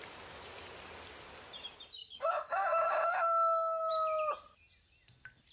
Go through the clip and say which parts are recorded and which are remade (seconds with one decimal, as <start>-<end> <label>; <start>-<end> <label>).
0.0-2.0 recorded; 2.0-3.9 remade; 3.9-5.5 recorded

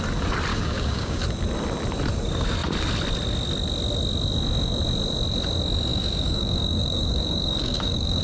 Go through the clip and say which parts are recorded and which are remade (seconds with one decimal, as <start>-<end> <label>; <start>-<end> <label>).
0.0-0.5 recorded; 0.5-1.2 remade; 1.2-5.9 recorded; 5.9-8.2 remade

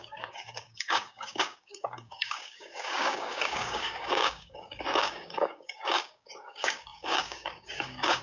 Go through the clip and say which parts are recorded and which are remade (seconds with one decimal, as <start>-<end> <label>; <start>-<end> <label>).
0.0-8.2 remade